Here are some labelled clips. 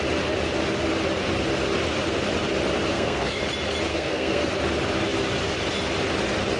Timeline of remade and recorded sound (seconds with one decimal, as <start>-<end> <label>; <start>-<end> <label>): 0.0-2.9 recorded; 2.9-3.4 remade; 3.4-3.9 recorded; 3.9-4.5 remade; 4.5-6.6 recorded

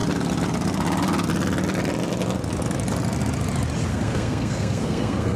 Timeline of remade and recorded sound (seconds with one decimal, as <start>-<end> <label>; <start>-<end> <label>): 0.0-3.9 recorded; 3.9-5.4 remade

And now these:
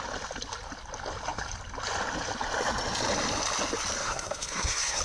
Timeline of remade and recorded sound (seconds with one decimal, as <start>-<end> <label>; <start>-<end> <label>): 0.0-4.0 recorded; 4.0-5.0 remade